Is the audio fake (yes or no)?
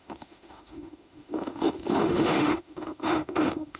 yes